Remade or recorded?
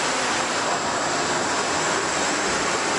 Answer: remade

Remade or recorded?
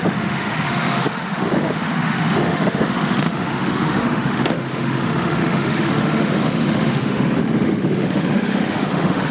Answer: remade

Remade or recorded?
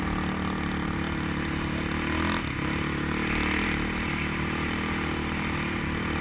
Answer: recorded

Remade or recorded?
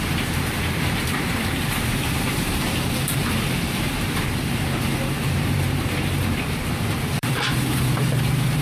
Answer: remade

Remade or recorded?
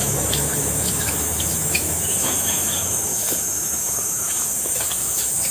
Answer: remade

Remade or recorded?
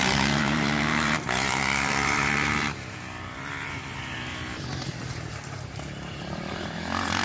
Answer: remade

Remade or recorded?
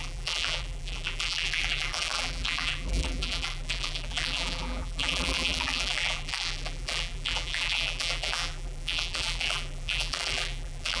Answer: remade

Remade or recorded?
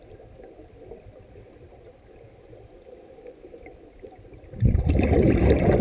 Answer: recorded